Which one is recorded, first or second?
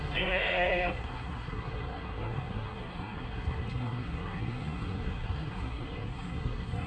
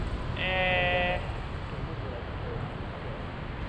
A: second